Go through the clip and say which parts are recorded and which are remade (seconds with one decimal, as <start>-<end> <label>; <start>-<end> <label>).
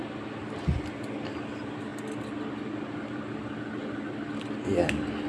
0.0-5.3 recorded